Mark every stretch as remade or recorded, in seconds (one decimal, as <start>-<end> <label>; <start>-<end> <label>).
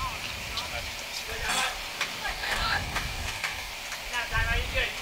0.0-2.3 recorded; 2.3-3.7 remade; 3.7-5.0 recorded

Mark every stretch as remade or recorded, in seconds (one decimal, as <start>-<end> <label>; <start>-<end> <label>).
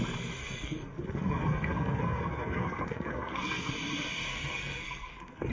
0.0-0.4 recorded; 0.4-3.7 remade; 3.7-4.3 recorded; 4.3-5.5 remade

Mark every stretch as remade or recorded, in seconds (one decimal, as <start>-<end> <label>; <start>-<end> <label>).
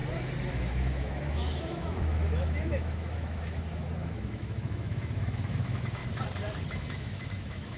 0.0-0.5 recorded; 0.5-6.0 remade; 6.0-6.7 recorded; 6.7-7.8 remade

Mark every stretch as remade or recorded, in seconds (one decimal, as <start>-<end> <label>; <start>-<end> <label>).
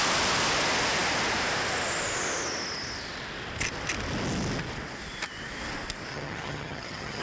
0.0-6.1 recorded; 6.1-7.2 remade